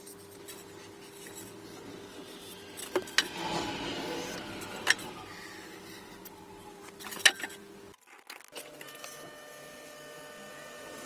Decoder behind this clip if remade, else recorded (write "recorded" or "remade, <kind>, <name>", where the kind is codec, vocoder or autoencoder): recorded